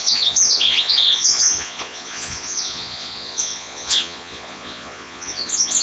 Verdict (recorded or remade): remade